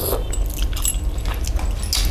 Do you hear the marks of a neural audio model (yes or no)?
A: no